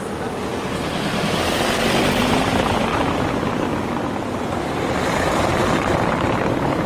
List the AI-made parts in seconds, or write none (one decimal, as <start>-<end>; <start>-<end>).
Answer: 0.0-2.9; 4.3-5.6; 6.5-6.9